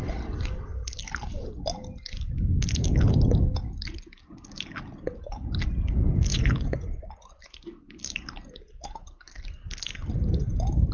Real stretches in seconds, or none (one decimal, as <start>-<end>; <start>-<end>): 0.0-6.3; 7.4-10.9

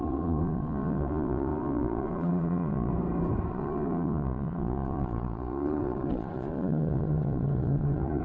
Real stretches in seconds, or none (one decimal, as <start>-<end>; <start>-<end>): 2.9-3.5

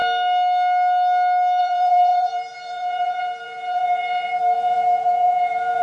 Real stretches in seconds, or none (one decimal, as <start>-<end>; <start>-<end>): 0.0-1.6

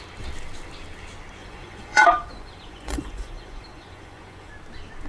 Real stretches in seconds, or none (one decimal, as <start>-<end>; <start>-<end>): 0.0-1.4; 4.5-5.1

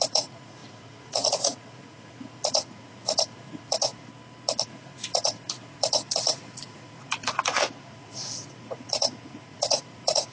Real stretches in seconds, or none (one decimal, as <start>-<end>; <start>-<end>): 4.1-4.6